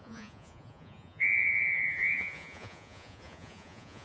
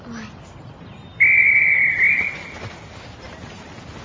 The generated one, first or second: first